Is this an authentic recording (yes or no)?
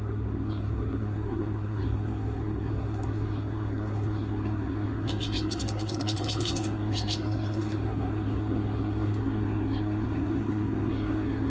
no